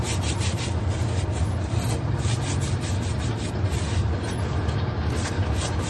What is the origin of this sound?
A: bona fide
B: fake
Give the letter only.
A